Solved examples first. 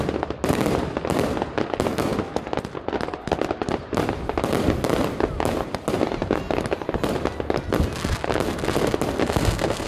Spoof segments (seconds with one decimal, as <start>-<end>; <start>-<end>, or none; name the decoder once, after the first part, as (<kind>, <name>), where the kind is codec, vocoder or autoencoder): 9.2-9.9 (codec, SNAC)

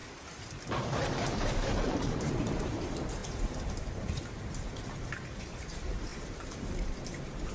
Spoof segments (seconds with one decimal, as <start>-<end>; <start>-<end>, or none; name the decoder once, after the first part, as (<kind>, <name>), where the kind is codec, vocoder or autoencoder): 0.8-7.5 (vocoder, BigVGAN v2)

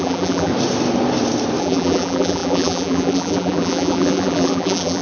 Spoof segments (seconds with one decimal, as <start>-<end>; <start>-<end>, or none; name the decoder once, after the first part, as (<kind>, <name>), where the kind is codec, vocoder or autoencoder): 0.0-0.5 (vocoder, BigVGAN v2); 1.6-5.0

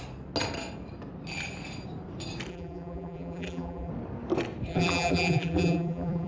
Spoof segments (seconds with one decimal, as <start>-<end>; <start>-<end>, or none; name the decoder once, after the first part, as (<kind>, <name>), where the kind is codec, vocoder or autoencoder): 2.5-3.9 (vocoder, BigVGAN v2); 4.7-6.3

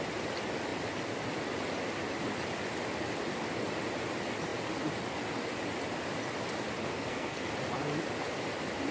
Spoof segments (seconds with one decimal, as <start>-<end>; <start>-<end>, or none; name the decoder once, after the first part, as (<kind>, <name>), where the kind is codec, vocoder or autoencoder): 6.9-7.5 (codec, SNAC)